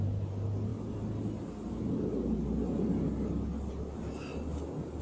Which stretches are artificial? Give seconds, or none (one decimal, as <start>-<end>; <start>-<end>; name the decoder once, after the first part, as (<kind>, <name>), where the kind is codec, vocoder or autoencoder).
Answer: none